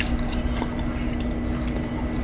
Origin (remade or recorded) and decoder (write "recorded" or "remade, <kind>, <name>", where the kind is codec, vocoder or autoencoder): recorded